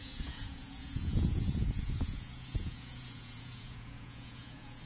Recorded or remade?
remade